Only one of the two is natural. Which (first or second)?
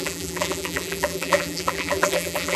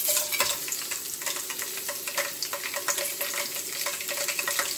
second